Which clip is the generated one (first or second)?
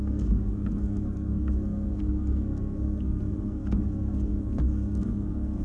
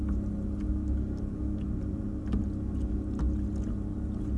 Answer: first